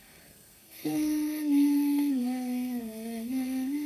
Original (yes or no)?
no